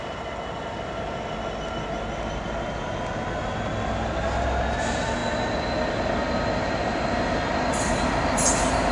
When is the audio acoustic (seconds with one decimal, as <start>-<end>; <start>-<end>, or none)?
0.0-8.9